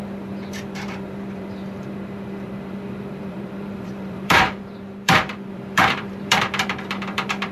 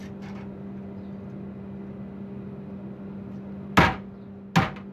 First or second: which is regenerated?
first